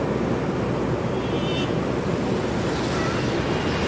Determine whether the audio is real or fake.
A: real